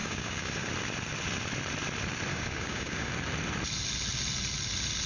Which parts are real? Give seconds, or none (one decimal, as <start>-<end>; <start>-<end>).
0.7-2.3; 3.1-5.1

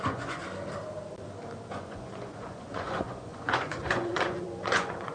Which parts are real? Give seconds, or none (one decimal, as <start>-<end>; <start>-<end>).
0.4-1.7

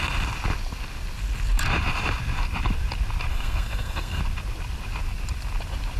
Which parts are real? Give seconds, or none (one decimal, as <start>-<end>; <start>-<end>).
0.0-3.3; 4.2-6.0

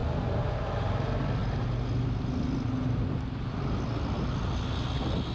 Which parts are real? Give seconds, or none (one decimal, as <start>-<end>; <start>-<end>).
0.0-5.3

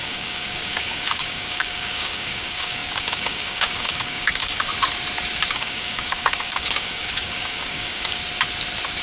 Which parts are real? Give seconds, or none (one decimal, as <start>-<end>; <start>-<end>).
4.7-5.5; 8.2-9.0

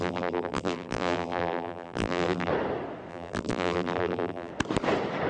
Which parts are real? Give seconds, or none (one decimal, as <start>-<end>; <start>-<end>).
2.5-3.1; 4.5-5.3

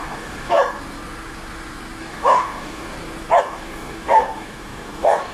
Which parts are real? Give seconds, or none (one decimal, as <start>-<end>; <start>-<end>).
0.6-2.0; 2.9-3.4

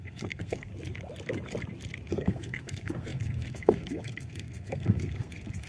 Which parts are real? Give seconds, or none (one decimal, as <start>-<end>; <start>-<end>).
0.7-2.1